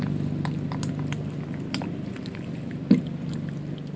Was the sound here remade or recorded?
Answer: recorded